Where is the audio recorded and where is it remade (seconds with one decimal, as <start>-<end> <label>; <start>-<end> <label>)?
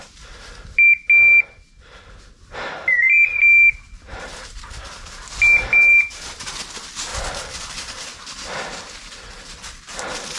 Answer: 0.0-7.1 recorded; 7.1-8.0 remade; 8.0-10.4 recorded